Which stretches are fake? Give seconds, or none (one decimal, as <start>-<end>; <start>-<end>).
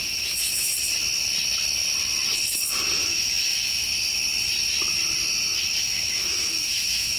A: 0.0-0.7; 2.9-3.9; 5.8-7.2